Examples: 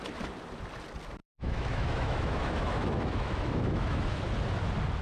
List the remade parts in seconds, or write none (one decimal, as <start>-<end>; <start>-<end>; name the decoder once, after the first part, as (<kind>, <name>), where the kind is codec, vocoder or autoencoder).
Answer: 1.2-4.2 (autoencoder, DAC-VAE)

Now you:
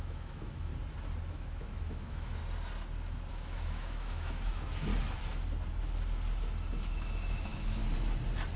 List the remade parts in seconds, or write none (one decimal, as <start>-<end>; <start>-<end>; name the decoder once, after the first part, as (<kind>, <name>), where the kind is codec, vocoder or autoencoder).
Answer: 0.0-0.7 (autoencoder, DAC-VAE); 1.3-2.4; 3.3-4.9; 6.8-7.8

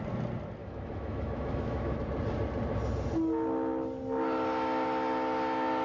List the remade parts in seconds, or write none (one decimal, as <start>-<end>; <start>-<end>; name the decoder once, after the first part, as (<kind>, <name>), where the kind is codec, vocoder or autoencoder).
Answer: 0.6-2.0 (autoencoder, DAC-VAE)